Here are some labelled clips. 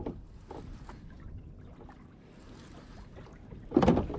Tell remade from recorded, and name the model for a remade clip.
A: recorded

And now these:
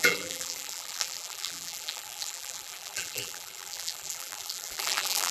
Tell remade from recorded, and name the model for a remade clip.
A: remade, vocoder, BigVGAN v2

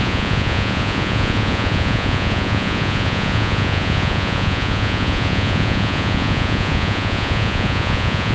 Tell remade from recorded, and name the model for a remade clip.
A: remade, vocoder, Vocos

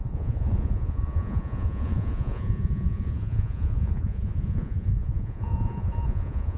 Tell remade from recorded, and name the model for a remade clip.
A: remade, vocoder, Vocos